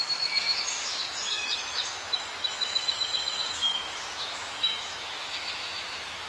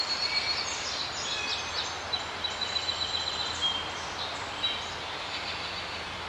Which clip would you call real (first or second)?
second